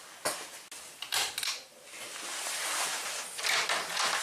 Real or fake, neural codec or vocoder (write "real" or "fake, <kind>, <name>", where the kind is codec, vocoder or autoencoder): real